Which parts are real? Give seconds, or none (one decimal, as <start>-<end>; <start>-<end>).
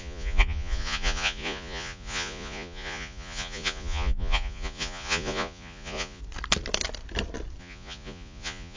6.2-7.6